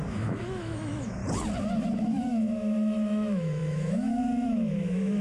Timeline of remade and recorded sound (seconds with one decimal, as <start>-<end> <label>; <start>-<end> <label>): 0.0-1.2 remade; 1.2-1.8 recorded; 1.8-5.2 remade